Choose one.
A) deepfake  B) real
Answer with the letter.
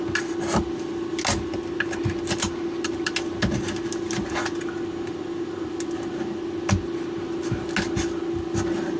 B